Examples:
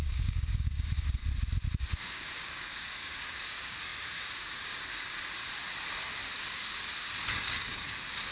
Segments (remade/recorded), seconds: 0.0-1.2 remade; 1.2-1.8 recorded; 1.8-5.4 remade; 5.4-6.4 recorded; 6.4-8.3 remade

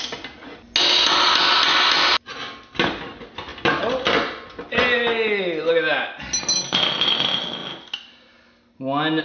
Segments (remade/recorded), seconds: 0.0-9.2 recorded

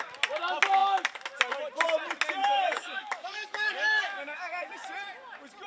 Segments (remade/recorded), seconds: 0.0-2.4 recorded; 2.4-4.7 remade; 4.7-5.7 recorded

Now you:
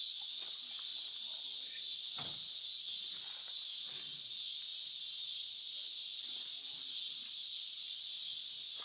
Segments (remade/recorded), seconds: 0.0-8.8 recorded

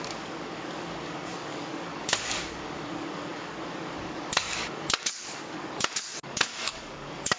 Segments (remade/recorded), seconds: 0.0-7.4 remade